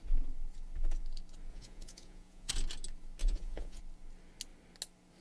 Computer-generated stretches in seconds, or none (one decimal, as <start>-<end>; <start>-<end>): 1.5-2.5; 3.2-3.8